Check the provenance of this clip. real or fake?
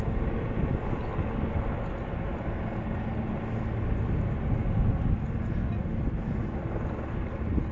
real